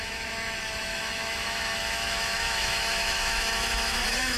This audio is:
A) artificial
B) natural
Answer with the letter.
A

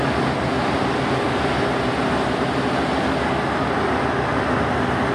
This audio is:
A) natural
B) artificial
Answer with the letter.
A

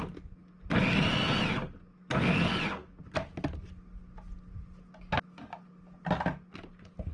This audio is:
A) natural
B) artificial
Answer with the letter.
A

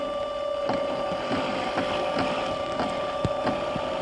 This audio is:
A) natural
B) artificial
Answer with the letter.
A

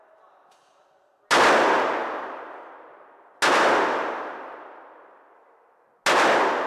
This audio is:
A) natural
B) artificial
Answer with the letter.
A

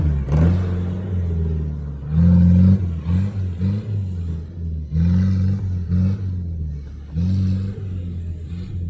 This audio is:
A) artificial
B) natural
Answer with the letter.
B